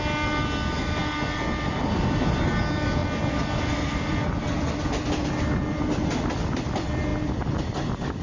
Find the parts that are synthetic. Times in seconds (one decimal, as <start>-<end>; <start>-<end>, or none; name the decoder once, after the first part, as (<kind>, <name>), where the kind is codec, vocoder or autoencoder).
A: none